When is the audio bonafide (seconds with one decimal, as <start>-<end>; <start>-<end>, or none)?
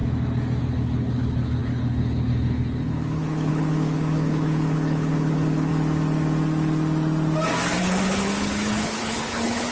0.0-0.6; 5.7-7.8